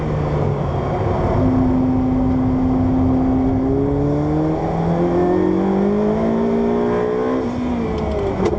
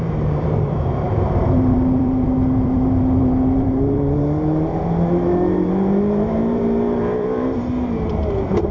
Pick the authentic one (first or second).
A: first